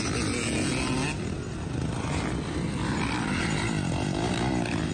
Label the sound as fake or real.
real